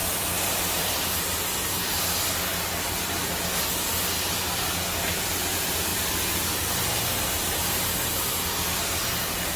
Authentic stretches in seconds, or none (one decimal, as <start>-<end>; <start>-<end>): 2.2-5.9; 7.0-9.6